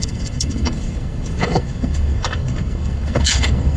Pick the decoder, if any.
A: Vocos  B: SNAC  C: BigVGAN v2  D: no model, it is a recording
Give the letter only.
B